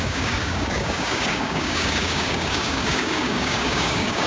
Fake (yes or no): yes